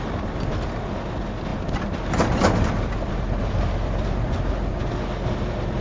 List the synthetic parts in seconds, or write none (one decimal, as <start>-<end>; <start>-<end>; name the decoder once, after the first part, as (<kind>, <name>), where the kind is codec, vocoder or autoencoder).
1.5-4.8 (vocoder, BigVGAN v2)